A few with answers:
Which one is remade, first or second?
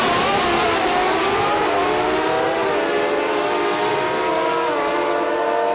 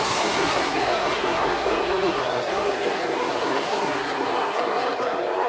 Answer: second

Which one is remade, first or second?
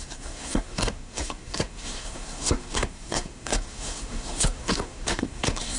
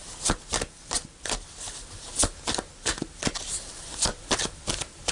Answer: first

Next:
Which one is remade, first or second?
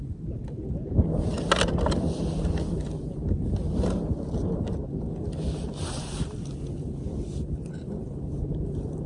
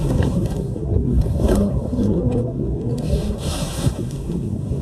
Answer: second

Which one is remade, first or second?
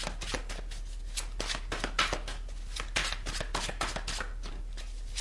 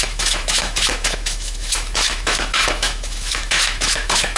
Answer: second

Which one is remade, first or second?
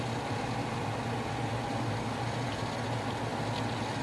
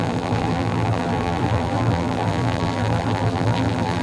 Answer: second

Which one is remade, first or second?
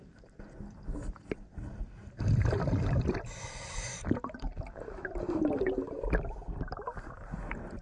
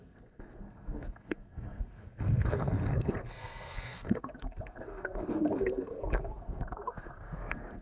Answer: second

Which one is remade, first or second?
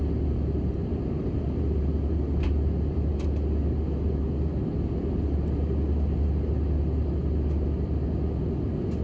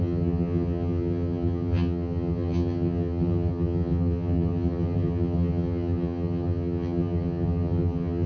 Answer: second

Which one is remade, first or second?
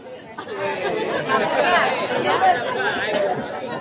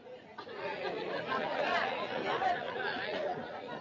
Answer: second